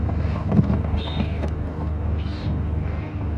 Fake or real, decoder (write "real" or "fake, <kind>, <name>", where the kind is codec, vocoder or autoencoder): fake, codec, DAC